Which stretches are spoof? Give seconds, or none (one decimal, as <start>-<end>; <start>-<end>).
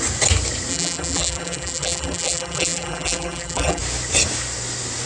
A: 0.7-3.8